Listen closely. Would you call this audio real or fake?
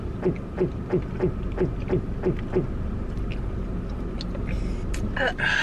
real